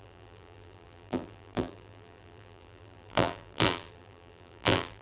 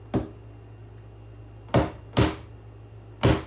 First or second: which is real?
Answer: second